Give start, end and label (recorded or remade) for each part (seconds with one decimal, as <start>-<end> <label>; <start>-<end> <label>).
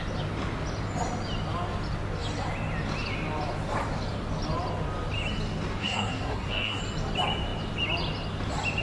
0.0-5.8 recorded; 5.8-6.8 remade; 6.8-8.8 recorded